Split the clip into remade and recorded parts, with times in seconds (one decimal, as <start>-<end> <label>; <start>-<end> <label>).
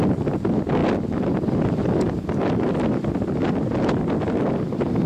0.0-5.1 recorded